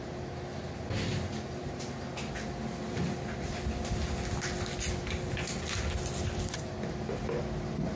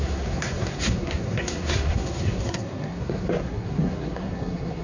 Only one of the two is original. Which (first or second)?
first